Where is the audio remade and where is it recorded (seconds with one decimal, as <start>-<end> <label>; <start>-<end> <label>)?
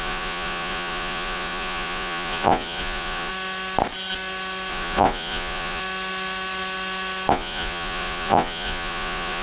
0.0-3.3 remade; 3.3-4.7 recorded; 4.7-5.8 remade; 5.8-7.3 recorded; 7.3-9.4 remade